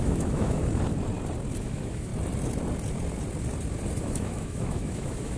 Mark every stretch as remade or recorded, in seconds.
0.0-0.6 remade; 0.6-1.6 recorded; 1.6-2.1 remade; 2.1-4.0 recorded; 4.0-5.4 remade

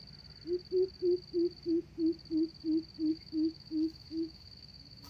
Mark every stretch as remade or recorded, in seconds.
0.0-3.1 recorded; 3.1-5.1 remade

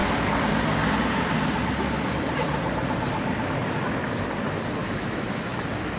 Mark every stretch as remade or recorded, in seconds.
0.0-4.8 recorded; 4.8-5.6 remade; 5.6-6.0 recorded

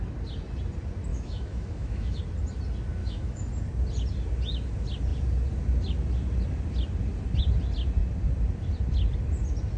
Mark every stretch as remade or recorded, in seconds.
0.0-1.1 recorded; 1.1-2.2 remade; 2.2-3.0 recorded; 3.0-3.5 remade; 3.5-9.8 recorded

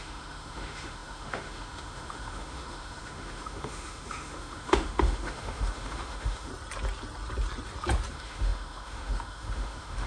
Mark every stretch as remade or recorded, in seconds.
0.0-6.5 remade; 6.5-8.1 recorded; 8.1-10.1 remade

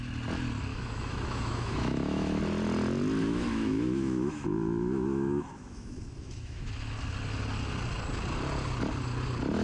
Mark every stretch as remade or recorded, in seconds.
0.0-0.7 recorded; 0.7-2.4 remade; 2.4-3.2 recorded; 3.2-6.7 remade; 6.7-9.6 recorded

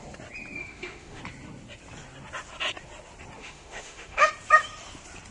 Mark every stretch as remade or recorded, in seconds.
0.0-0.6 recorded; 0.6-1.2 remade; 1.2-3.4 recorded; 3.4-4.3 remade; 4.3-5.3 recorded

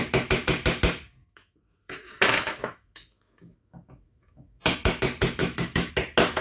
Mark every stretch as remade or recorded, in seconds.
0.0-1.2 recorded; 1.2-5.0 remade; 5.0-5.4 recorded; 5.4-5.9 remade; 5.9-6.4 recorded